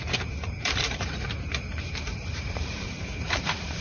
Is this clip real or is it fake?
fake